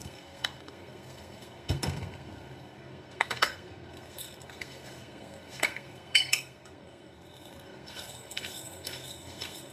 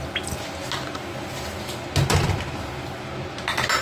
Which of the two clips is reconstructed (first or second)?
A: first